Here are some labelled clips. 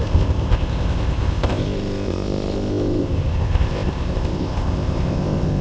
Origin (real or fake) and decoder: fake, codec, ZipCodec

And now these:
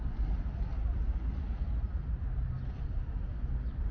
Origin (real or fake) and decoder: real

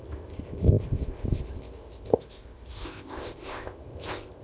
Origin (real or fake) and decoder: fake, codec, ZipCodec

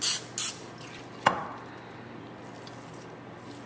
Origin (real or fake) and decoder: real